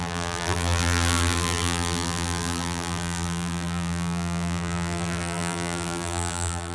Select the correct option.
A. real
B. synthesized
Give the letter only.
B